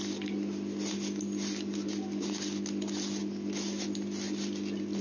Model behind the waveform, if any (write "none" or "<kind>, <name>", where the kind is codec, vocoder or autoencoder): none